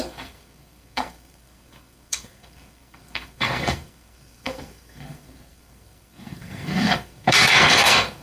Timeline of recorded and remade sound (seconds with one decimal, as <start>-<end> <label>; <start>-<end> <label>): 0.0-8.2 remade